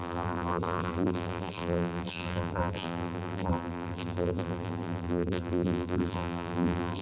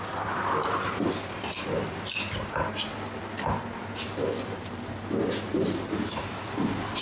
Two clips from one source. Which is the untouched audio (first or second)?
second